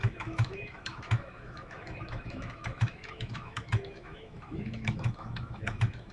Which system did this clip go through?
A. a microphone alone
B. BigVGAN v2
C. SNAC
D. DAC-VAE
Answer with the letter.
D